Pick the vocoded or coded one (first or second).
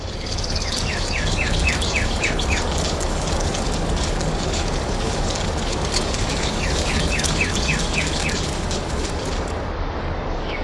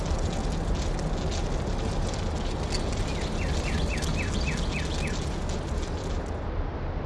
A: first